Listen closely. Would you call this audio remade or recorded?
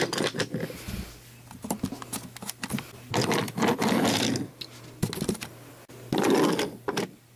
recorded